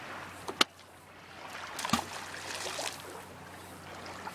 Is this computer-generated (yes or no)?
no